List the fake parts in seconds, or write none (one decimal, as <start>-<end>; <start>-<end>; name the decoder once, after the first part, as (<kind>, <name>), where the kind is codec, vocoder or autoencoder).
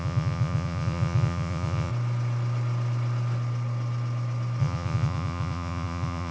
0.0-1.9 (vocoder, Vocos); 4.6-6.3